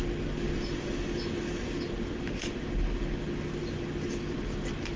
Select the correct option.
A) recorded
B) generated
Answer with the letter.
A